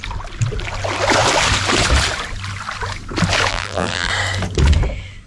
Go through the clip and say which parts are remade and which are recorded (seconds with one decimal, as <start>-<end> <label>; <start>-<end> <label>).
0.0-3.5 recorded; 3.5-4.1 remade; 4.1-5.3 recorded